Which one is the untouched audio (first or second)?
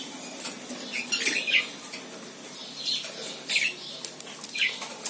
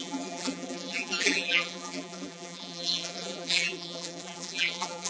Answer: first